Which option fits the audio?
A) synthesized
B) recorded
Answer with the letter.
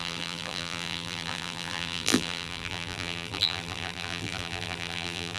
A